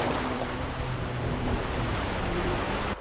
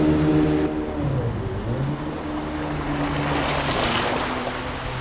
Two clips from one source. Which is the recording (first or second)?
second